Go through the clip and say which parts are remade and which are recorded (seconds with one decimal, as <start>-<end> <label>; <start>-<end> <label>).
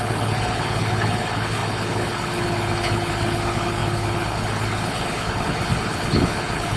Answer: 0.0-6.8 remade